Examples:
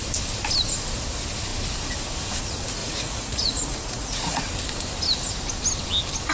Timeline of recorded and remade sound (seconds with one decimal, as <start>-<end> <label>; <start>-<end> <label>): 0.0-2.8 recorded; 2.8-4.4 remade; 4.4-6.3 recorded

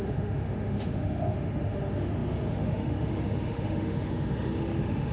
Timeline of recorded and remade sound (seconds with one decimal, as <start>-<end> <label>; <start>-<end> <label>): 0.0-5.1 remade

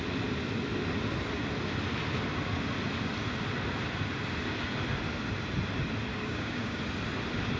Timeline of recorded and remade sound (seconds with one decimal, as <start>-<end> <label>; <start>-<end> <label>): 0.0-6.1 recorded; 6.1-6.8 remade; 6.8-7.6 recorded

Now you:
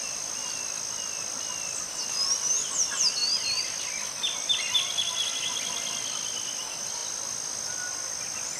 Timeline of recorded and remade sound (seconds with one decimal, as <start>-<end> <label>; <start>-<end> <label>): 0.0-8.6 recorded

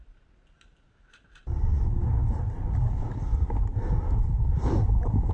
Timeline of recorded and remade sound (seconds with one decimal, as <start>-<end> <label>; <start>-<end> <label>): 0.0-5.3 recorded